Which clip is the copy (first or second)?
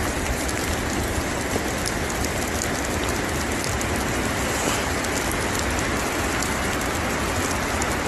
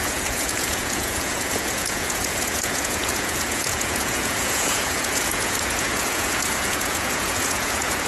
second